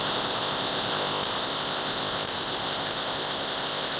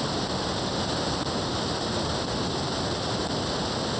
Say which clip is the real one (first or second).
second